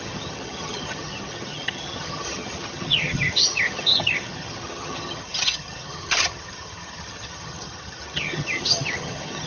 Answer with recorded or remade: remade